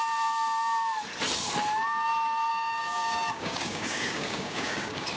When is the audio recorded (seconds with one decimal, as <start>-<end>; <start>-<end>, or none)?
0.0-2.5